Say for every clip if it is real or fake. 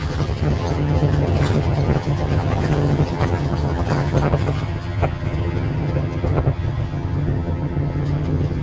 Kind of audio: fake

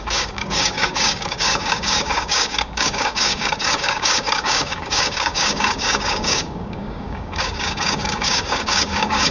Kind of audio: fake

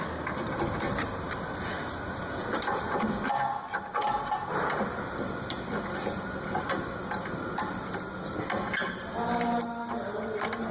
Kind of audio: real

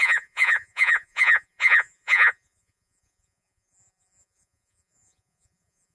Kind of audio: fake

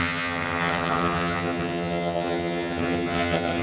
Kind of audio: fake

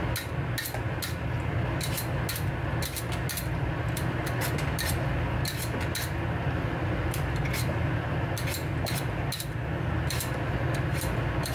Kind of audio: real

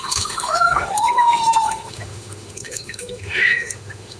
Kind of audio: fake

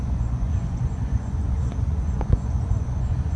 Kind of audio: fake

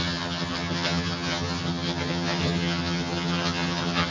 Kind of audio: fake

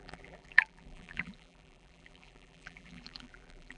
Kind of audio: fake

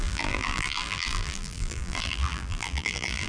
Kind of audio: fake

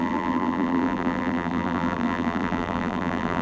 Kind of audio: fake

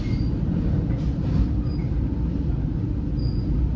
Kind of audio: real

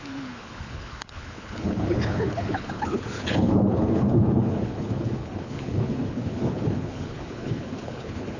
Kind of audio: fake